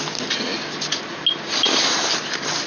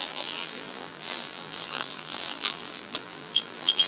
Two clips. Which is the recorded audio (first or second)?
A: first